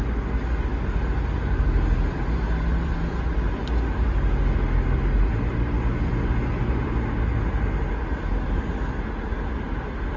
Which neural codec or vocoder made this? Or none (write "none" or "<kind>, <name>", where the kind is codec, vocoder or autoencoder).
none